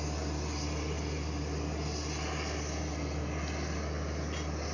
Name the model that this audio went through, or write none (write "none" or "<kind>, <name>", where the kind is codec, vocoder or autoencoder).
none